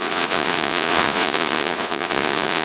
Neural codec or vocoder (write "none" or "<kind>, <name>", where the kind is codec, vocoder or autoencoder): vocoder, Vocos